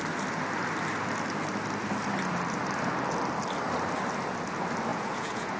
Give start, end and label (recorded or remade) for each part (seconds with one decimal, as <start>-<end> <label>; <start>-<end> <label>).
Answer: 0.0-4.9 recorded; 4.9-5.6 remade